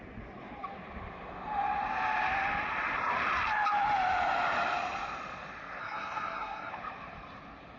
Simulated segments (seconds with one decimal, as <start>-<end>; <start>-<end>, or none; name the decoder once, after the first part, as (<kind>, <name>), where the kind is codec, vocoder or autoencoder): 5.8-6.7 (codec, SNAC)